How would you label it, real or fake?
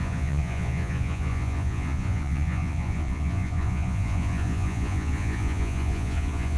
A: fake